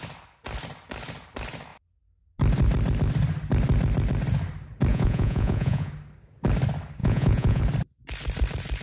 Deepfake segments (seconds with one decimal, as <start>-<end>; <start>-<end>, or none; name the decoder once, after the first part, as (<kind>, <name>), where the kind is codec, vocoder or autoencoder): 4.9-5.9 (vocoder, Vocos); 7.0-7.6

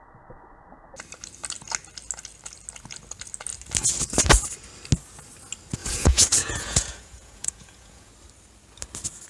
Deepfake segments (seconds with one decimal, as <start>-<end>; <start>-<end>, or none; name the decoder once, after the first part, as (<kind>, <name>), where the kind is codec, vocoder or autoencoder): 5.8-8.1 (vocoder, Vocos)

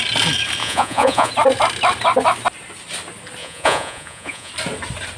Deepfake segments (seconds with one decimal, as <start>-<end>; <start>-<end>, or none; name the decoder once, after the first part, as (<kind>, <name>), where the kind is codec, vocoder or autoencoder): 0.6-1.3 (vocoder, Vocos); 3.4-4.5

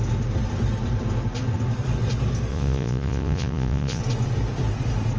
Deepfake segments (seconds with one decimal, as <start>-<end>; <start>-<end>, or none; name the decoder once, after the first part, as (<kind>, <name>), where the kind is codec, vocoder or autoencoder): 2.5-4.0 (vocoder, Vocos)